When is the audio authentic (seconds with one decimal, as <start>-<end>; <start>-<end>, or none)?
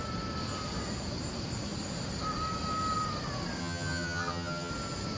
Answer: 0.0-3.6; 4.7-5.2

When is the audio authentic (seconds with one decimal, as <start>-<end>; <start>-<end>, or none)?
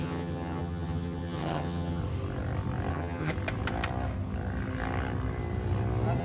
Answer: 2.0-2.9; 3.3-6.2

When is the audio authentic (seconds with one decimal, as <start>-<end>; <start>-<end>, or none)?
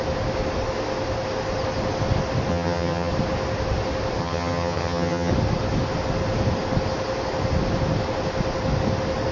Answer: 0.0-2.5; 3.1-4.2; 5.3-9.3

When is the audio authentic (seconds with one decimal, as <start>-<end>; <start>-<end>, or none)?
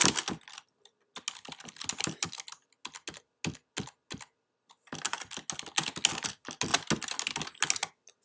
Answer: 0.0-8.2